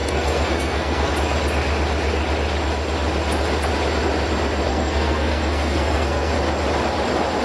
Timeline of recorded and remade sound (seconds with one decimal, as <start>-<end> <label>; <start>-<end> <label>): 0.0-1.1 remade; 1.1-4.7 recorded; 4.7-6.3 remade; 6.3-7.4 recorded